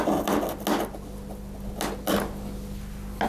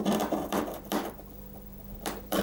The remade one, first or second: second